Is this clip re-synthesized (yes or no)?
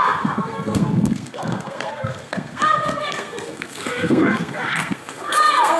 yes